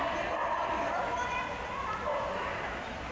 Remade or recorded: recorded